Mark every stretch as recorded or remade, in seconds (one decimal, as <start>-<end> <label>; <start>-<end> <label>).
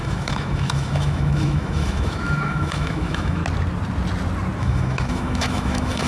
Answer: 0.0-3.4 remade; 3.4-4.6 recorded; 4.6-6.1 remade